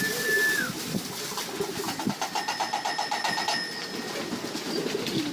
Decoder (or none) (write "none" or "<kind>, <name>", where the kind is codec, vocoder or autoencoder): none